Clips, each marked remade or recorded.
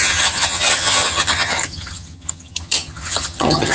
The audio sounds remade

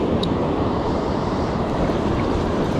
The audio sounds remade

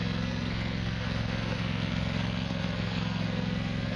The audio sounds remade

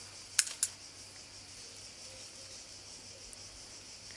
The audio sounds recorded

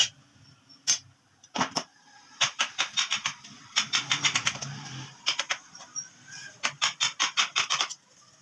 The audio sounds recorded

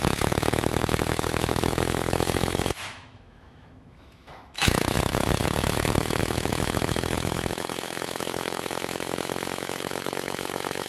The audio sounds remade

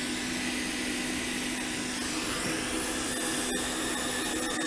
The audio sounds recorded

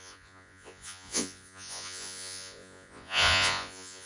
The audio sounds remade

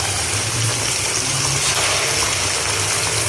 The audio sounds recorded